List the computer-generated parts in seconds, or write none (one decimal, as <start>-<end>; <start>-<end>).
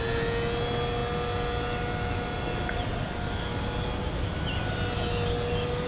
none